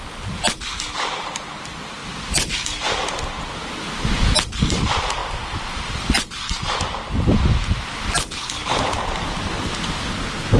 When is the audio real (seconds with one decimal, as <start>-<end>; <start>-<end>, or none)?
0.0-2.0; 2.5-5.2; 6.8-10.6